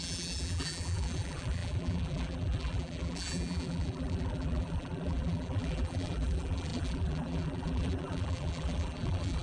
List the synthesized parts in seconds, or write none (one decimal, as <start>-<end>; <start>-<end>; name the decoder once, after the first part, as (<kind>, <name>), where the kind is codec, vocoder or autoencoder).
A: 0.0-9.4 (vocoder, BigVGAN v2)